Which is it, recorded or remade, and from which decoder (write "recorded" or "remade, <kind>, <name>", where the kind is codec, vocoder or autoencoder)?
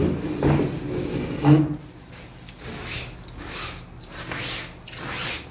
recorded